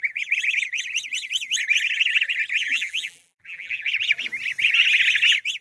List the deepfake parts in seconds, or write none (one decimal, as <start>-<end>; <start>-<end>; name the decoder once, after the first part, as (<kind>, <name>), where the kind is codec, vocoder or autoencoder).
2.6-3.9 (vocoder, BigVGAN v2)